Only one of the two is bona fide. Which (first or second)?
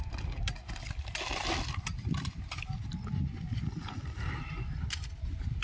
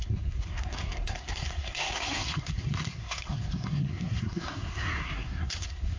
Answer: first